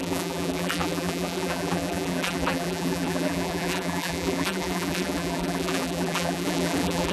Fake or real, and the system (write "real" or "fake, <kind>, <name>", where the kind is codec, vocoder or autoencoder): fake, vocoder, BigVGAN v2